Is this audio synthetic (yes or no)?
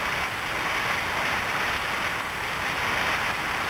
no